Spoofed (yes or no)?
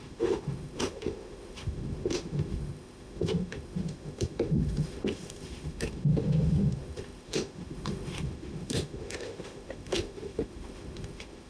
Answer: yes